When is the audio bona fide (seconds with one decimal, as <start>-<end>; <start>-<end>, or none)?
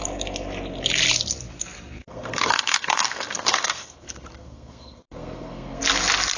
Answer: 0.0-2.0; 5.8-6.4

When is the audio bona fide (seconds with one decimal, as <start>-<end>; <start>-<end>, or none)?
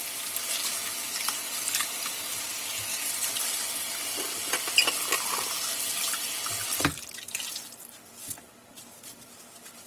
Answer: 0.0-9.9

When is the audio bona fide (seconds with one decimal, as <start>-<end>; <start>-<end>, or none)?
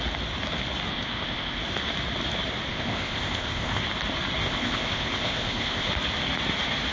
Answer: 0.0-0.9; 1.6-2.7; 3.8-4.4; 5.9-6.9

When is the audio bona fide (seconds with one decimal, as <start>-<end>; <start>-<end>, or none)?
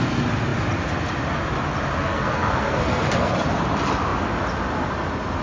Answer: 0.0-2.0; 3.3-5.4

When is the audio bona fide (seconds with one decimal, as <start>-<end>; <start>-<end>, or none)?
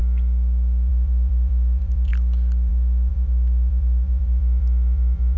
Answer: 0.0-0.9; 2.1-2.7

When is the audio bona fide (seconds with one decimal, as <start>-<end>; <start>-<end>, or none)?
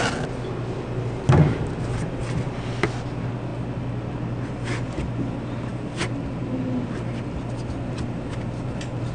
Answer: 0.0-9.1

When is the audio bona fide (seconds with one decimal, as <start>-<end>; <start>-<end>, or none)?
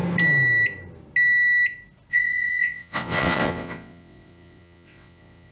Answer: 0.0-2.1